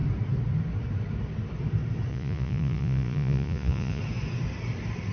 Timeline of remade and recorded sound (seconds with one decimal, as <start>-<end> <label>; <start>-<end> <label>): 0.0-2.1 recorded; 2.1-4.0 remade; 4.0-5.1 recorded